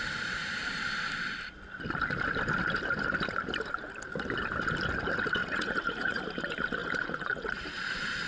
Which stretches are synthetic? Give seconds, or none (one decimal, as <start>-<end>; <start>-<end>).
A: 5.4-6.2; 6.8-7.6